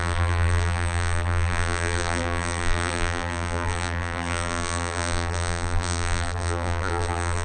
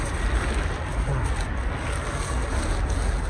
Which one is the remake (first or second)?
first